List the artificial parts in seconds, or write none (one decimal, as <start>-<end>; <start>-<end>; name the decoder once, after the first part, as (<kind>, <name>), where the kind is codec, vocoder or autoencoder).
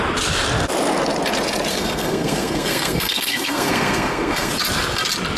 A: 1.7-4.5 (codec, SNAC)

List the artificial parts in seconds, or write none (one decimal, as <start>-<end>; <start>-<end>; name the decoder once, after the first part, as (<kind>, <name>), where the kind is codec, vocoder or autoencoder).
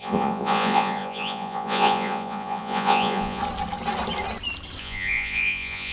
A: 0.0-3.4 (vocoder, Vocos); 4.8-5.9